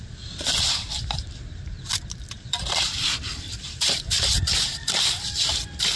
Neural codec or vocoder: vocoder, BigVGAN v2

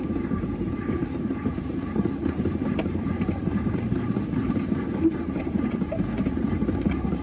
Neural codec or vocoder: vocoder, BigVGAN v2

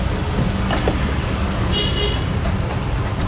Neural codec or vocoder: none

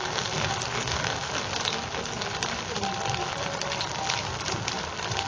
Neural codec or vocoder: none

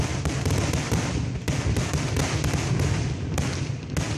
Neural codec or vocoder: none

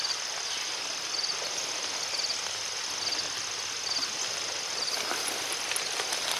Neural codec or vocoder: none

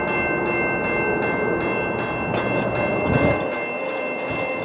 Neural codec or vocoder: none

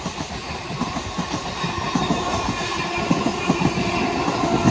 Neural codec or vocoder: none